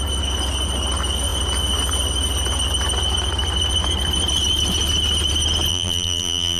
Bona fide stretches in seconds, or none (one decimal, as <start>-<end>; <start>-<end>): 0.0-5.7